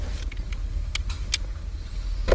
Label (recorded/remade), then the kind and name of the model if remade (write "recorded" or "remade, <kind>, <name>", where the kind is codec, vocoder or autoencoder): recorded